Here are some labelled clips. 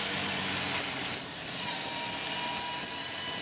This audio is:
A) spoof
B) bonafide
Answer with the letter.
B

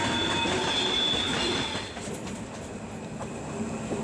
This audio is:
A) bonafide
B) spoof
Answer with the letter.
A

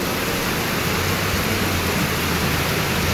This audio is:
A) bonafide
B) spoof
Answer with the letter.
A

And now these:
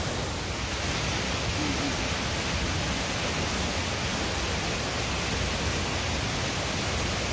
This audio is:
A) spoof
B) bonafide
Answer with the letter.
B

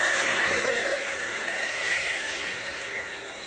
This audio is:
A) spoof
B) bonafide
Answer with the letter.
A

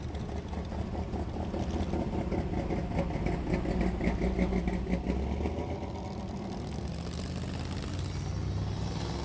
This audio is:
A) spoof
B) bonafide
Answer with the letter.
B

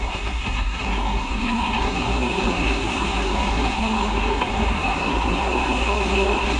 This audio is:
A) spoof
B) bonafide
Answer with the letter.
A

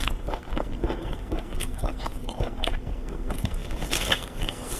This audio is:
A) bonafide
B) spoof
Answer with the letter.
B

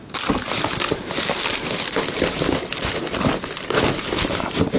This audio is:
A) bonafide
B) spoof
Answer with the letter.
A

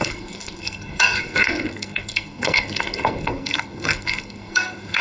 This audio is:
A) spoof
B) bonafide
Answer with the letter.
A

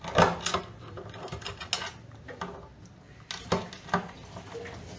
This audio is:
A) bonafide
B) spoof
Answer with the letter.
A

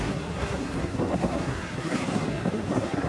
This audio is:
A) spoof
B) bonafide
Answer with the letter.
A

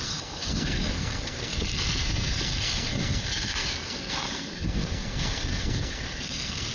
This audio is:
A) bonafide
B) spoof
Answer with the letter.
B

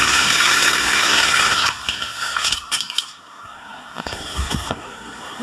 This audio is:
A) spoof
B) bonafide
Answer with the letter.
A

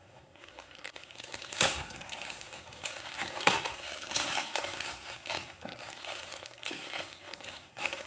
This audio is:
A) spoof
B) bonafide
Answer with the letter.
A